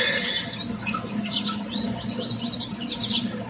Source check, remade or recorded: recorded